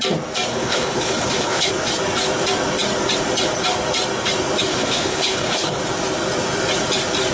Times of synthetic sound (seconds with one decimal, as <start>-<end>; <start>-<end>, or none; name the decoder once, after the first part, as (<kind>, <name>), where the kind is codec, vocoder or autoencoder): 0.5-1.7 (codec, HILCodec); 4.7-5.8